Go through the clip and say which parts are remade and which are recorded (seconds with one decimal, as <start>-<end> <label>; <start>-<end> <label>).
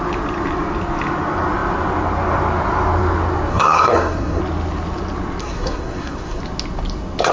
0.0-3.5 recorded; 3.5-4.4 remade; 4.4-5.4 recorded; 5.4-6.4 remade; 6.4-7.3 recorded